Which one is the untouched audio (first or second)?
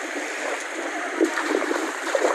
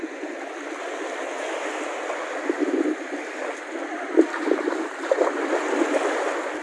second